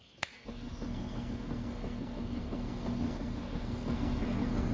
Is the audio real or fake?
fake